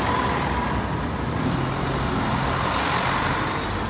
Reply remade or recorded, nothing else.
recorded